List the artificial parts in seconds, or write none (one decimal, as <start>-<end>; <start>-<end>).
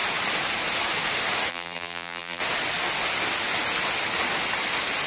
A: 1.5-2.4